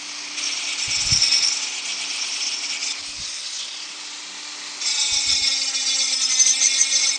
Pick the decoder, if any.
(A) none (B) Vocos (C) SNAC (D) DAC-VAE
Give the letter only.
A